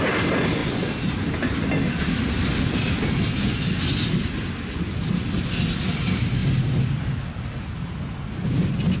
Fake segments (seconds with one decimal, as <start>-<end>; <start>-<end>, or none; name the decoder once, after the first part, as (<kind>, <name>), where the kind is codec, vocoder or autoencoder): none

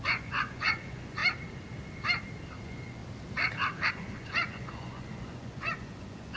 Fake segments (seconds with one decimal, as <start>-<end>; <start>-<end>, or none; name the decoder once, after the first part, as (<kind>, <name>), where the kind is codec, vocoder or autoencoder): 0.0-1.2 (vocoder, Vocos); 2.6-3.0; 3.9-6.4

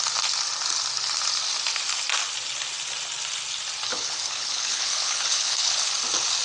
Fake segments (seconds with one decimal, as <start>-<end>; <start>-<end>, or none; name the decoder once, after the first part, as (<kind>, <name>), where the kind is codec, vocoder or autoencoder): 3.9-5.9 (codec, HILCodec)

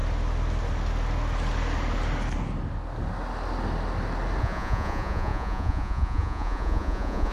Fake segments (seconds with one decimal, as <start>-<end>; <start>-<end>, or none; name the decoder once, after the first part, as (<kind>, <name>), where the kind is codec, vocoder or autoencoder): 4.4-7.3 (vocoder, Vocos)